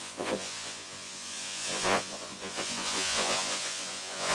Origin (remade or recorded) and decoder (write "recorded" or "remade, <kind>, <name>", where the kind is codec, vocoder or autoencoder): remade, vocoder, Vocos